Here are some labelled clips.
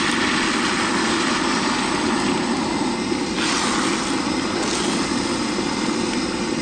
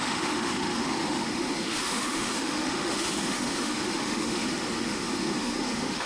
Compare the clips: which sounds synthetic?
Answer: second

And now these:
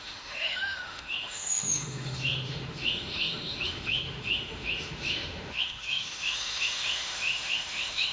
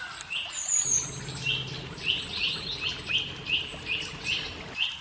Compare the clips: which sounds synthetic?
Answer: first